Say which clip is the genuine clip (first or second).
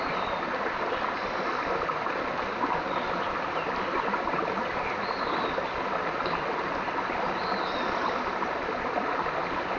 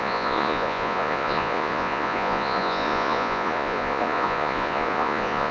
first